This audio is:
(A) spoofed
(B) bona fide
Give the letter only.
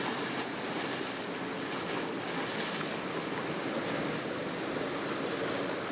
B